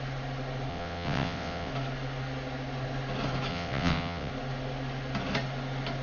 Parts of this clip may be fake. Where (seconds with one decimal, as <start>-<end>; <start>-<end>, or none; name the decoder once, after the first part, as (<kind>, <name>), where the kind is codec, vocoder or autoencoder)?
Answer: 0.7-1.7 (vocoder, WaveNeXt); 3.5-4.3